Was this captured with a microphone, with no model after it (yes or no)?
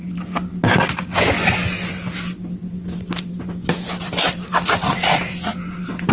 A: yes